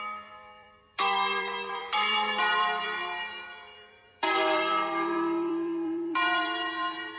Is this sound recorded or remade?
remade